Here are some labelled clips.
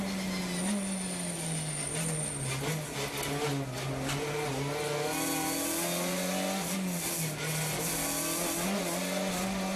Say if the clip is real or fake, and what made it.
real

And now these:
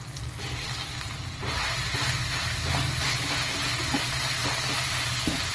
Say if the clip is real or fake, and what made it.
real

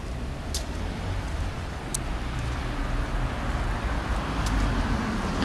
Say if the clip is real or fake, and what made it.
real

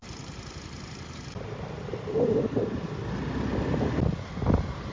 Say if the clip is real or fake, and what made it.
real